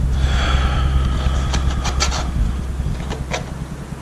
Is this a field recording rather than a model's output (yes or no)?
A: yes